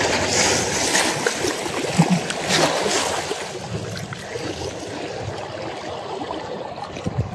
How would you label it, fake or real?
real